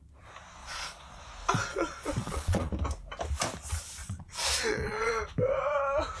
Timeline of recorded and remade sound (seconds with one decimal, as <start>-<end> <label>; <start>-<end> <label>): 0.0-0.6 recorded; 0.6-1.2 remade; 1.2-1.7 recorded; 1.7-2.7 remade; 2.7-4.0 recorded; 4.0-5.1 remade; 5.1-6.2 recorded